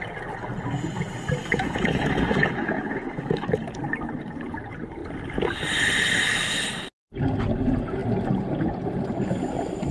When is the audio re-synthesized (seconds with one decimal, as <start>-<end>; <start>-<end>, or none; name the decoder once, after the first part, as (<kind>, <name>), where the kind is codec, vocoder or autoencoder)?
1.4-3.6 (autoencoder, DAC-VAE)